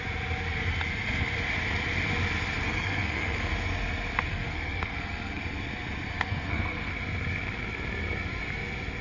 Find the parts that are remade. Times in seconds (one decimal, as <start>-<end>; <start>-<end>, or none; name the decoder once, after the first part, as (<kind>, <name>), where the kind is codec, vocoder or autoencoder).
2.6-3.5 (codec, SNAC); 4.3-5.4; 6.1-6.9